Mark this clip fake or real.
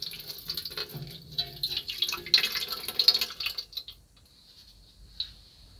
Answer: real